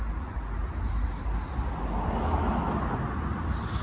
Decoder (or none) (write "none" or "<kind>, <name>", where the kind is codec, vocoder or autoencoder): none